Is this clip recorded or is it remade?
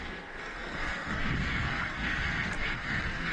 remade